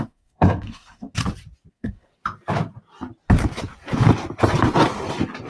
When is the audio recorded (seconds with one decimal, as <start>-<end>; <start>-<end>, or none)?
1.2-1.7; 2.1-5.5